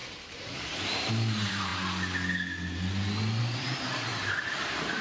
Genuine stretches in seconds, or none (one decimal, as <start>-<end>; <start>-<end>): 1.7-3.4